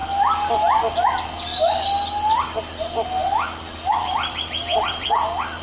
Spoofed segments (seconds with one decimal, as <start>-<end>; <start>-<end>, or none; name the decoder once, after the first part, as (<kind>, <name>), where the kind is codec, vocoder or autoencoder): 4.0-5.1 (vocoder, BigVGAN v2)

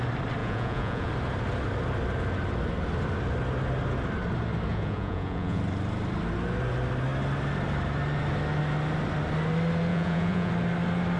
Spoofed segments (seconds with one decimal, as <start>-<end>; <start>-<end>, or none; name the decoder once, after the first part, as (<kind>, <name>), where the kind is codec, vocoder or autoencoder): 0.4-1.1 (vocoder, Vocos); 4.7-5.6; 9.9-10.5